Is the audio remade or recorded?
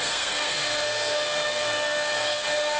remade